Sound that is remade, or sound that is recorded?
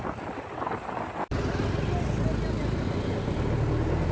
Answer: recorded